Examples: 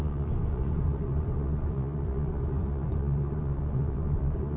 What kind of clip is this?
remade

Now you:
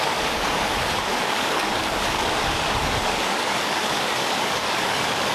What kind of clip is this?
remade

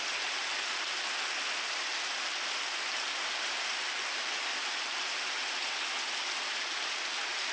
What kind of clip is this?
recorded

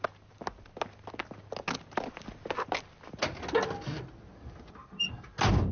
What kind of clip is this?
recorded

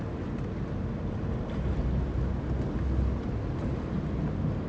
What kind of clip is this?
recorded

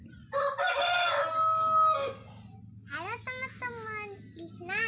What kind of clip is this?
recorded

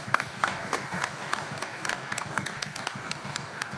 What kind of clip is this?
remade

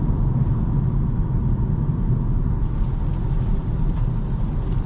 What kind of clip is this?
recorded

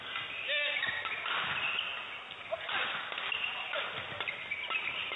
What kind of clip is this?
recorded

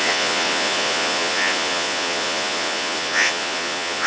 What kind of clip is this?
remade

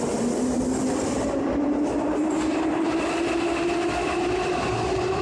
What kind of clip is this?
recorded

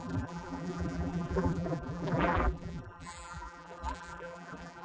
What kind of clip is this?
remade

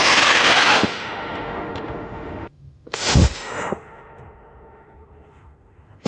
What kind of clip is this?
remade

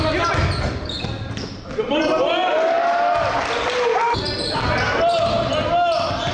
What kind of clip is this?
recorded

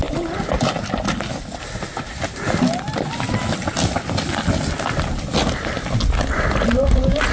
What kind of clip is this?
recorded